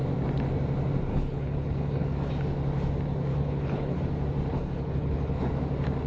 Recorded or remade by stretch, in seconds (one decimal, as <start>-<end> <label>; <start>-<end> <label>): 0.0-1.1 recorded; 1.1-2.3 remade; 2.3-3.3 recorded; 3.3-4.0 remade; 4.0-4.5 recorded; 4.5-5.5 remade; 5.5-6.1 recorded